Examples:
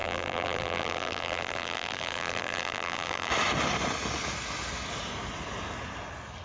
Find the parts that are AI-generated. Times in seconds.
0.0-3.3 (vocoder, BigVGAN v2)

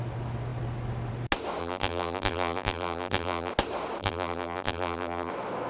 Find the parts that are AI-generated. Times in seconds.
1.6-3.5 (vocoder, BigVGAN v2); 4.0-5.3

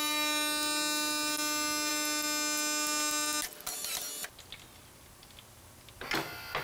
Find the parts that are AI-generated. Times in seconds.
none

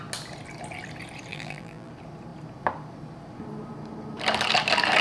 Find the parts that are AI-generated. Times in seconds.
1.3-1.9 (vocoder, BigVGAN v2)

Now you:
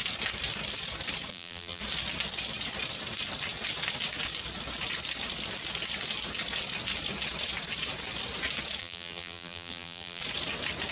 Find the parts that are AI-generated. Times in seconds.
1.3-1.8 (vocoder, BigVGAN v2); 8.8-10.2

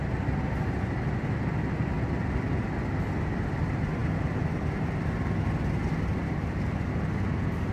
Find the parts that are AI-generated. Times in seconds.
none

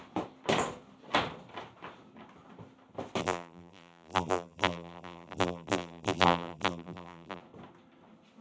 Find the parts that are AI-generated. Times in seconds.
3.2-7.4 (vocoder, BigVGAN v2)

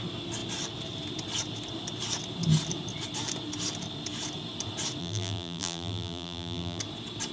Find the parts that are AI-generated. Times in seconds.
5.0-6.8 (vocoder, BigVGAN v2)